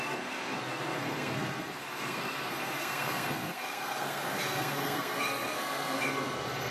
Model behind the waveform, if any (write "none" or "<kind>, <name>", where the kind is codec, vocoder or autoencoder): codec, SNAC